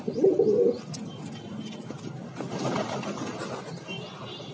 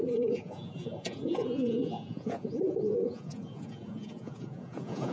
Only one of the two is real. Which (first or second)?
first